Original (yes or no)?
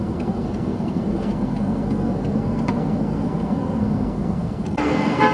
no